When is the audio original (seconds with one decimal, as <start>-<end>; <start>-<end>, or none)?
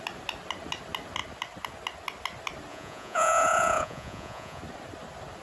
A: 0.0-2.7; 4.6-5.4